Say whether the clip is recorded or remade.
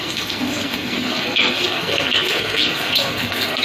remade